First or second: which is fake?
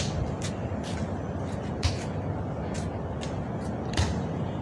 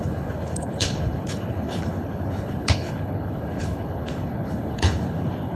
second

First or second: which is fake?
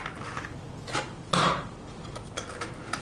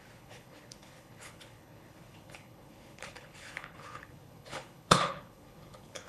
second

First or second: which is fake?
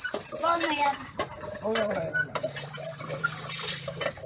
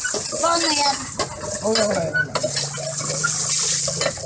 first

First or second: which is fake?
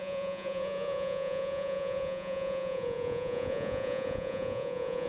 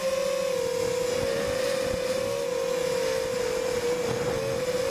first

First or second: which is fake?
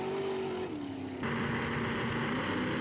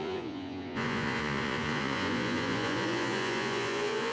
second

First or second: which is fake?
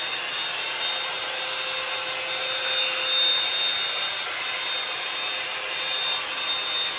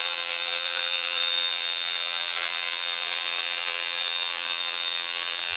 second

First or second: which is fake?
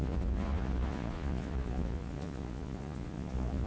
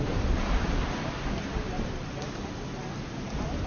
first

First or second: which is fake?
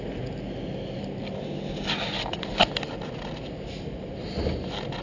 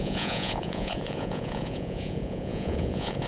second